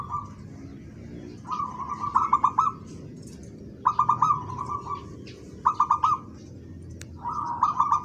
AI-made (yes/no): no